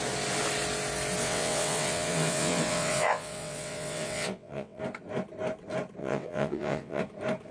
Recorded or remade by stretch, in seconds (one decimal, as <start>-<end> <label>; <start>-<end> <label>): 0.0-1.2 recorded; 1.2-4.8 remade; 4.8-6.0 recorded; 6.0-7.0 remade; 7.0-7.5 recorded